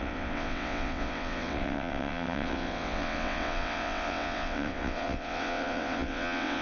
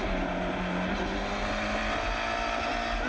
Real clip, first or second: second